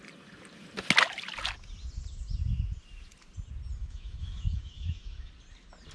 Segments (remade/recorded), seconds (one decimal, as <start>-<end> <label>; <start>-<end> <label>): 0.0-3.8 recorded; 3.8-5.3 remade; 5.3-5.9 recorded